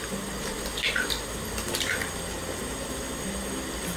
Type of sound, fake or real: real